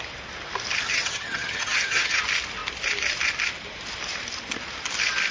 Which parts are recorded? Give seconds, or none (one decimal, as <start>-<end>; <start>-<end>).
0.0-0.9; 2.2-5.3